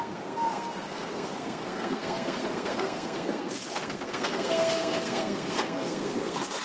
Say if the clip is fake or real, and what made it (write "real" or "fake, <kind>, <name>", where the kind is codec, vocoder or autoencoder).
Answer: fake, codec, SNAC